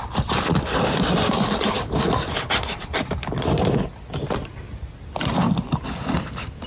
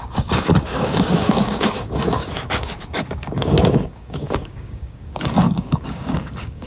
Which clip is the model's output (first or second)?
second